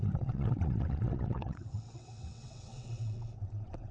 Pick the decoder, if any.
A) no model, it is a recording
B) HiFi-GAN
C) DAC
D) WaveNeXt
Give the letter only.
D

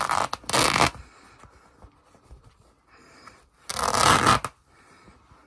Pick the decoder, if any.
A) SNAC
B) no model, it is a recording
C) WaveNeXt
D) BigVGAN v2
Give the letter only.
B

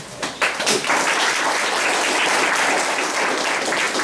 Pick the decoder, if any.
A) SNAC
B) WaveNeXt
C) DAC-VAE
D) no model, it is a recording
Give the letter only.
D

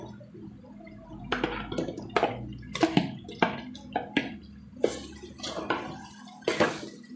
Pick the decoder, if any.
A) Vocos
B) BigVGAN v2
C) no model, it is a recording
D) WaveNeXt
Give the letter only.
C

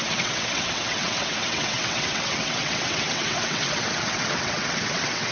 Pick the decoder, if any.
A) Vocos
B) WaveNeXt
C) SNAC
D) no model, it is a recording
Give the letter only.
B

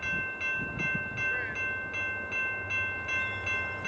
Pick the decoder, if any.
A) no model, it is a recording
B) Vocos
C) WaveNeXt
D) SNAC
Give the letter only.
A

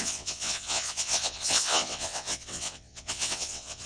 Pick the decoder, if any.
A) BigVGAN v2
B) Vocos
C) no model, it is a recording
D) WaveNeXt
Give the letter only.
D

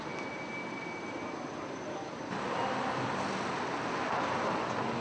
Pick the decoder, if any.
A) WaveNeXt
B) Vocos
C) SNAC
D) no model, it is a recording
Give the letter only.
D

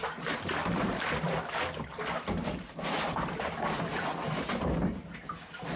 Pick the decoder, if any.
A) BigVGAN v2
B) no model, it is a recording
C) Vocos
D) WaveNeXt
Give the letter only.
B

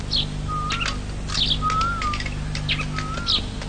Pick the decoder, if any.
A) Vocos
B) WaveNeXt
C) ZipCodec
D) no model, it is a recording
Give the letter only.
D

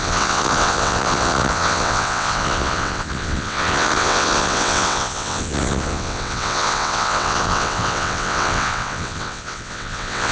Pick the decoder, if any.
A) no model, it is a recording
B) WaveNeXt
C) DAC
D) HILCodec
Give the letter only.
B